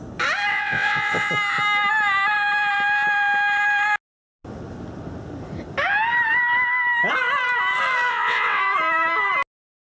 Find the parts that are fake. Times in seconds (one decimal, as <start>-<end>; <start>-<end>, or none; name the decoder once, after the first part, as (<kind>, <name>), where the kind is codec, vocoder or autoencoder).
0.5-1.3 (vocoder, WaveNeXt); 8.1-8.6